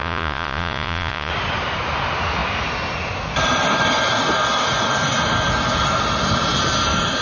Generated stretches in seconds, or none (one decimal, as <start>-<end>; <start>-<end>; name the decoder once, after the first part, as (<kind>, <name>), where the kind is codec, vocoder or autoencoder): 0.0-1.3 (vocoder, Vocos)

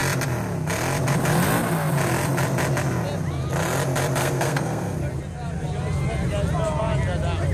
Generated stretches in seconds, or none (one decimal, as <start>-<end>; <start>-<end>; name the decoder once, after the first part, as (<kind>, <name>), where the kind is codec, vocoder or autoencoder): 4.2-5.0 (codec, SNAC)

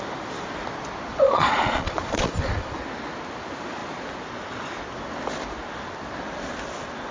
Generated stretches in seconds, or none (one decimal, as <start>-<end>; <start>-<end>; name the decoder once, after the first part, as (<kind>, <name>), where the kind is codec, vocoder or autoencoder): 1.1-2.8 (vocoder, Vocos)

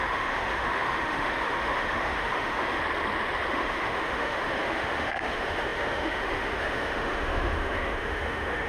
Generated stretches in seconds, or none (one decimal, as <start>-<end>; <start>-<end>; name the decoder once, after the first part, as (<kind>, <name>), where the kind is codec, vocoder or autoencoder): 0.0-2.8 (autoencoder, DAC-VAE); 3.5-8.7

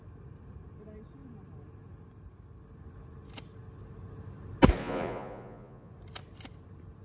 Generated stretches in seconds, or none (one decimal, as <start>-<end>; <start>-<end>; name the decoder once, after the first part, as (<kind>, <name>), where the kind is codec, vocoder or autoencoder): 4.8-5.9 (vocoder, Vocos)